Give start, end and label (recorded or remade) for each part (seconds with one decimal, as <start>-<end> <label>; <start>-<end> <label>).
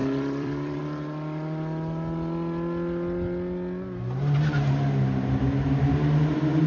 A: 0.0-0.8 remade; 0.8-6.7 recorded